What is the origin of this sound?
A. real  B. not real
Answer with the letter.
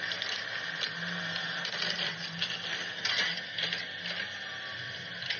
A